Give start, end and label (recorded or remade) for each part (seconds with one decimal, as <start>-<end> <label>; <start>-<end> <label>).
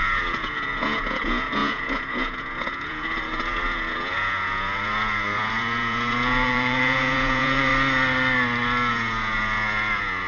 0.0-7.7 remade; 7.7-8.9 recorded; 8.9-10.3 remade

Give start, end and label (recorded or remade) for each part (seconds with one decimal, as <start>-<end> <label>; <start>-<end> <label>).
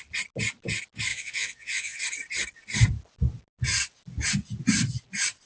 0.0-1.1 recorded; 1.1-2.0 remade; 2.0-5.5 recorded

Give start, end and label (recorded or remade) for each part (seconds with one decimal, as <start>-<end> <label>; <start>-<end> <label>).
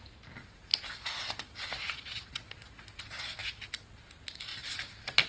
0.0-5.3 recorded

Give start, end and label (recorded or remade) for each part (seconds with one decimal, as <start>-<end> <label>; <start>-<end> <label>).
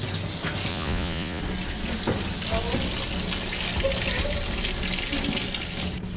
0.0-0.7 recorded; 0.7-1.4 remade; 1.4-6.2 recorded